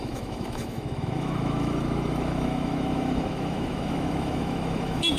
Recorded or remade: remade